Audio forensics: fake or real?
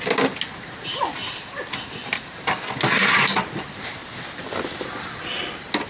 real